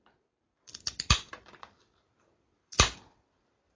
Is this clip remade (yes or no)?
yes